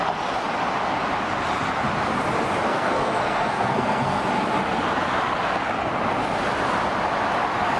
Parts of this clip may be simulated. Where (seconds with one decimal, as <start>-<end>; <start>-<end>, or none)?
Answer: 2.7-4.2